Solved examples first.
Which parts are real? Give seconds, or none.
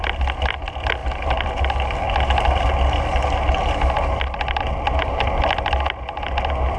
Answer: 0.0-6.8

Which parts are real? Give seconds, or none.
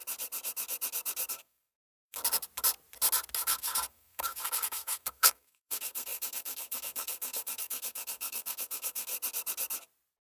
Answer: 0.0-1.3; 2.2-3.4; 9.1-10.3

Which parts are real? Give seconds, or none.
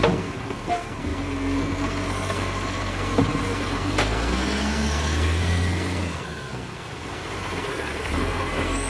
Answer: none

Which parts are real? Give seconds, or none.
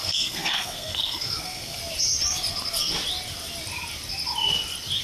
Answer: 1.8-5.0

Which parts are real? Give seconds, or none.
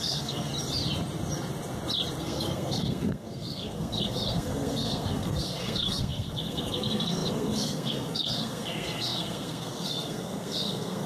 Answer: 0.5-2.2